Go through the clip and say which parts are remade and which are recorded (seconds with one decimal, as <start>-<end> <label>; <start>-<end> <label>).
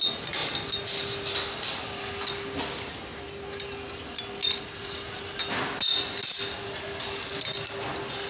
0.0-8.3 recorded